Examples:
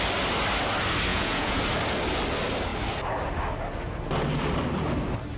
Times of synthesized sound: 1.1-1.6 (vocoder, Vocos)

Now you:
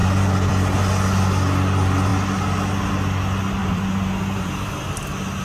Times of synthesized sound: 0.0-0.5 (vocoder, BigVGAN v2); 3.6-4.8

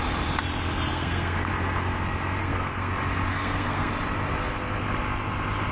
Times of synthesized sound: 0.9-1.5 (codec, SNAC); 2.4-2.9; 3.3-3.9

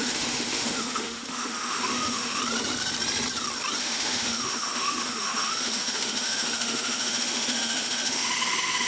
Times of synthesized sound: 0.0-2.4 (autoencoder, DAC-VAE); 3.8-8.9

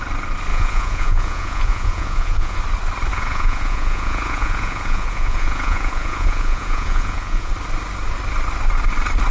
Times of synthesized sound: 0.5-2.6 (vocoder, Vocos); 3.1-7.5